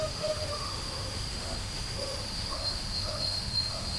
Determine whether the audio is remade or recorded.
remade